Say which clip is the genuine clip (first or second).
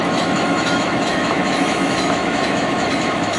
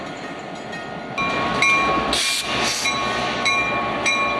second